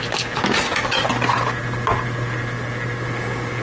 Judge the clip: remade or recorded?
recorded